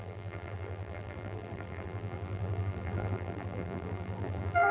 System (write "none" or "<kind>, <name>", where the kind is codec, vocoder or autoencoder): vocoder, BigVGAN v2